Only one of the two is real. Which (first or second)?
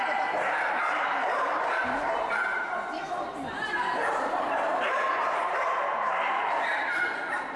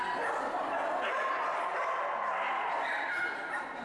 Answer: second